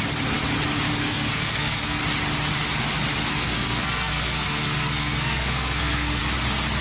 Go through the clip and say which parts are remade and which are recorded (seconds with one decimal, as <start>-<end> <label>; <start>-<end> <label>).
0.0-1.0 recorded; 1.0-2.0 remade; 2.0-3.3 recorded; 3.3-6.2 remade; 6.2-6.8 recorded